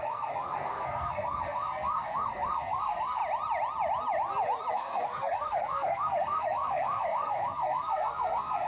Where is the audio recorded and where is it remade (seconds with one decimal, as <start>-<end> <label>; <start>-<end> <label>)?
0.0-3.2 remade; 3.2-4.7 recorded; 4.7-8.7 remade

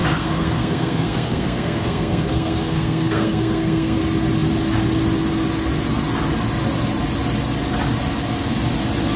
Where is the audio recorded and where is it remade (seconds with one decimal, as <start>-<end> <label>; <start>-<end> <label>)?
0.0-4.0 remade; 4.0-9.2 recorded